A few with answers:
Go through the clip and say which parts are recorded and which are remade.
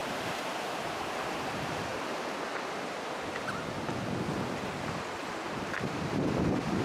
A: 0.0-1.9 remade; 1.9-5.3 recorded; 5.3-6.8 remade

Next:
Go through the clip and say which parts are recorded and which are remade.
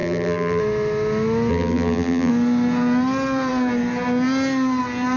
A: 0.0-0.6 remade; 0.6-1.5 recorded; 1.5-2.3 remade; 2.3-5.2 recorded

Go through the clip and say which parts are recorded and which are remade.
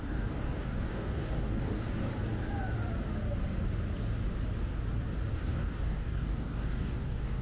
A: 0.0-2.1 remade; 2.1-5.3 recorded; 5.3-7.4 remade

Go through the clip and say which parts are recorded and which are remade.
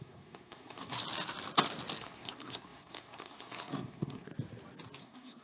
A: 0.0-1.0 remade; 1.0-2.0 recorded; 2.0-4.3 remade; 4.3-5.0 recorded; 5.0-5.4 remade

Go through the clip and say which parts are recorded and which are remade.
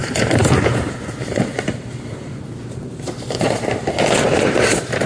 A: 0.0-1.5 remade; 1.5-2.1 recorded; 2.1-5.1 remade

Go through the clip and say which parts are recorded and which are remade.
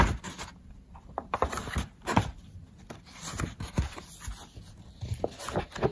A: 0.0-2.6 remade; 2.6-5.9 recorded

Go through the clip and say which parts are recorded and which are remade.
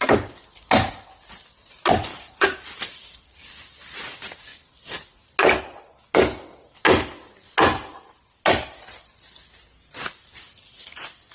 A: 0.0-2.1 recorded; 2.1-3.5 remade; 3.5-11.3 recorded